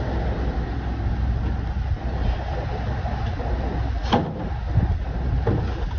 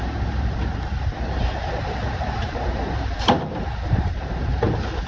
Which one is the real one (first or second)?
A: first